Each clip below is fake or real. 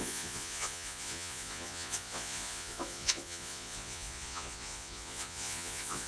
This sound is fake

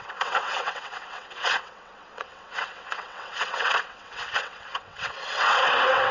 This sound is fake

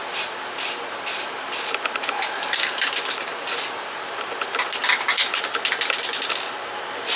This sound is real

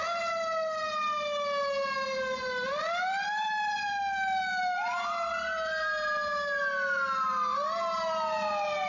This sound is real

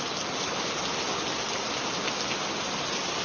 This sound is real